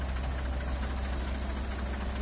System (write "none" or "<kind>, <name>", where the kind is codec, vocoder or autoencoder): none